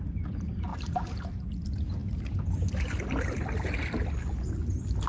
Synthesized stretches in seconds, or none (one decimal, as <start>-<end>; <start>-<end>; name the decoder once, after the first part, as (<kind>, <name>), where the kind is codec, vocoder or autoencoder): 0.7-1.5 (vocoder, BigVGAN v2)